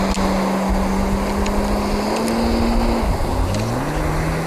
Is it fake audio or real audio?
real